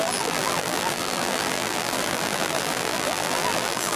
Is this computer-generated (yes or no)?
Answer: yes